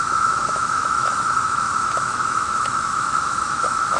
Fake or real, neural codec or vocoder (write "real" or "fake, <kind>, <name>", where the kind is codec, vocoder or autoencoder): fake, autoencoder, DAC-VAE